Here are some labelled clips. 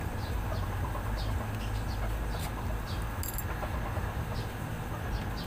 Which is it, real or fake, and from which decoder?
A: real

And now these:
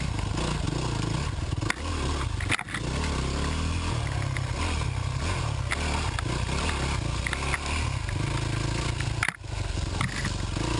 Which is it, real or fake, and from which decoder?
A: real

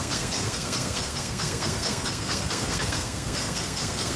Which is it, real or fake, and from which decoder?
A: fake, codec, SNAC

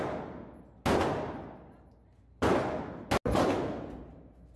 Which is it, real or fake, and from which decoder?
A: real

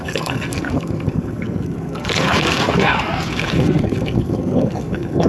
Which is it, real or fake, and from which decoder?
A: fake, codec, SNAC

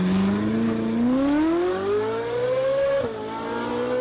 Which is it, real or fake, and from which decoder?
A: real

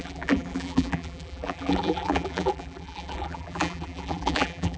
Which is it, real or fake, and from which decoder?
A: fake, vocoder, BigVGAN v2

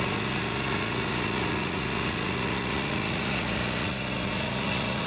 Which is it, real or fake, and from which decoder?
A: fake, vocoder, Vocos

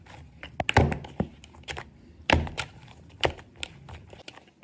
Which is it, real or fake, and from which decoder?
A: real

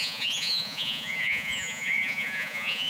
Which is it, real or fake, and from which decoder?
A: fake, vocoder, Vocos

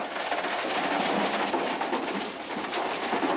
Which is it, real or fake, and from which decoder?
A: real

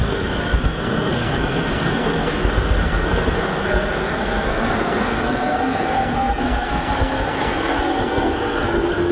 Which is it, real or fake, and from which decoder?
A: fake, codec, SNAC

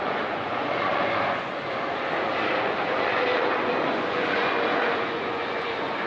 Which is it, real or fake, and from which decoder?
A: fake, vocoder, Vocos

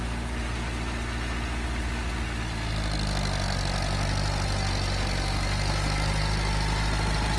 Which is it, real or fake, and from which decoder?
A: real